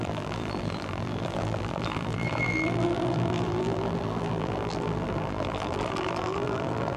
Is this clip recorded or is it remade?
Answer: remade